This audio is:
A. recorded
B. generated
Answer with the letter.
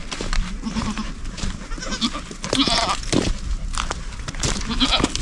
A